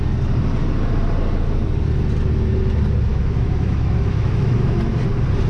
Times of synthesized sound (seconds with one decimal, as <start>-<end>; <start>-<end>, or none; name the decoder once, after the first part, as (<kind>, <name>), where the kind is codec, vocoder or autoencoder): 3.1-4.9 (autoencoder, DAC-VAE)